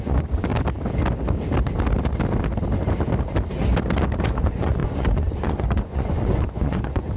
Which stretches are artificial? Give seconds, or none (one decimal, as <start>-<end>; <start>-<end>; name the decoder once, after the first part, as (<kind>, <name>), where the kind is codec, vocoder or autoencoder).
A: 0.0-0.5 (vocoder, Vocos); 4.2-7.2